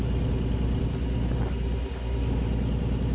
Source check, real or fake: real